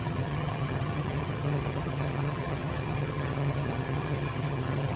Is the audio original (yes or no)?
no